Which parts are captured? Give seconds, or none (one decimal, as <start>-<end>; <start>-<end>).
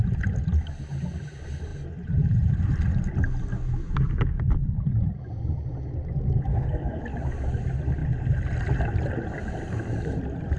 0.0-6.5; 7.0-10.6